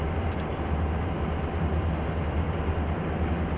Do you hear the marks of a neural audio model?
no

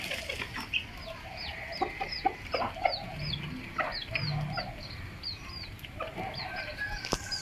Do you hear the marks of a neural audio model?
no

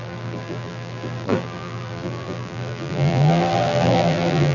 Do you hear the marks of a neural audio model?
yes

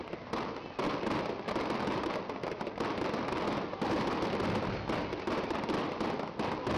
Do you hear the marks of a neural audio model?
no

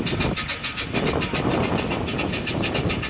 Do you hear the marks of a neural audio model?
no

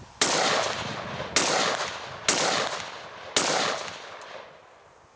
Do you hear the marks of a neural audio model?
no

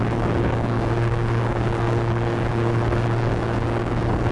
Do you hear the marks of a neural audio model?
yes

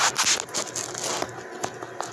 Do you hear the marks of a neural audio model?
no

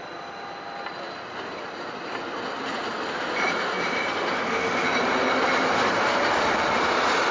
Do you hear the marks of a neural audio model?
no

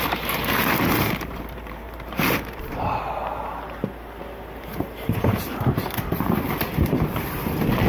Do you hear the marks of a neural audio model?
yes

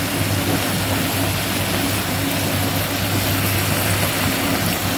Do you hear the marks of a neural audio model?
no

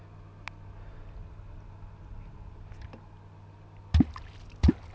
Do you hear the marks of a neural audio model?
no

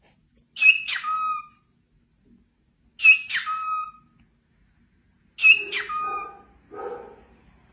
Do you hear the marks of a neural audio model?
no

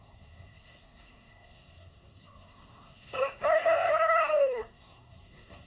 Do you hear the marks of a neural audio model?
yes